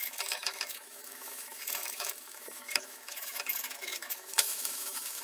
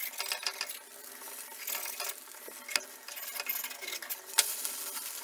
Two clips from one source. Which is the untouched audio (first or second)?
second